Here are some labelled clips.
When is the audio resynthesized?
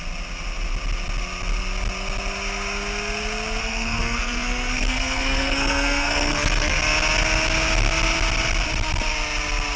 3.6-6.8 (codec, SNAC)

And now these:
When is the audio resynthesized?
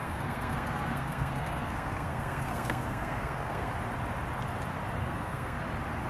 0.0-3.7 (codec, SNAC); 5.0-5.6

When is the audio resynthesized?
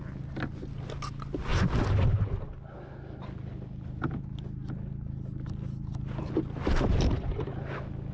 none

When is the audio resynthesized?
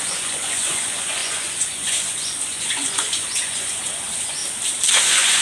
0.0-4.4 (vocoder, Vocos); 5.0-5.4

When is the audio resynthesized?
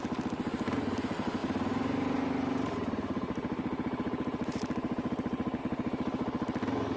1.4-5.6 (vocoder, BigVGAN v2)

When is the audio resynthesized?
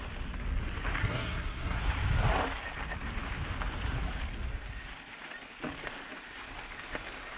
1.0-1.8 (codec, SNAC)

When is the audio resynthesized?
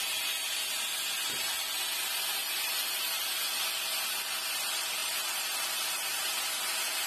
2.4-3.0 (vocoder, BigVGAN v2); 5.0-5.6